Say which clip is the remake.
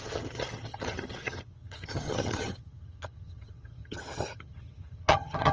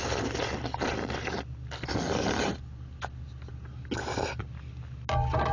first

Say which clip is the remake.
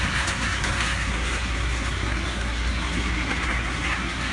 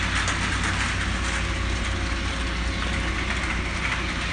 first